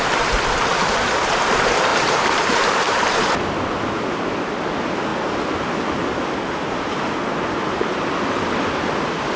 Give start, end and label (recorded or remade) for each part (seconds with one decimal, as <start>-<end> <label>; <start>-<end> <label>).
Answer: 0.0-1.9 recorded; 1.9-3.3 remade; 3.3-9.4 recorded